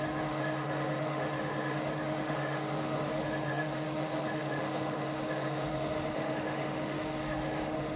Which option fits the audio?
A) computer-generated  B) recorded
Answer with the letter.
A